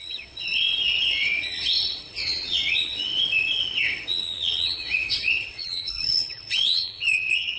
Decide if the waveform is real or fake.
fake